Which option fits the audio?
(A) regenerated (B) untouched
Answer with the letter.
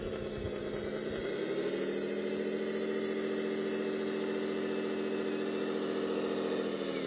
B